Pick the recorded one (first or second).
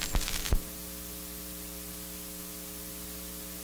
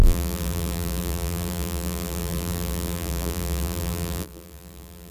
first